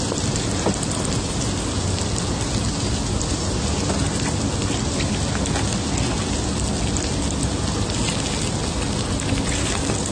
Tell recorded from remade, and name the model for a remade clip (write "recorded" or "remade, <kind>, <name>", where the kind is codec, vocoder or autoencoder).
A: recorded